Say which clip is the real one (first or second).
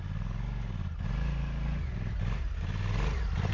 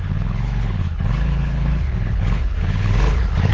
first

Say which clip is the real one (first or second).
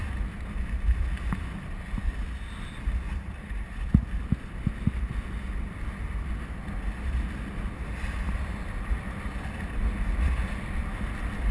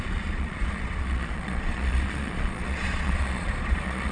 first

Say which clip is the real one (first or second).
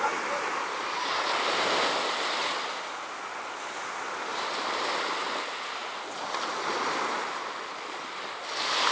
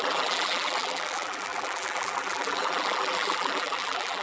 first